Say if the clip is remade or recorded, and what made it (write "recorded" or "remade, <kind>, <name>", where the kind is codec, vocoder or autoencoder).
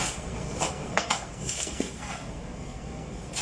remade, codec, SNAC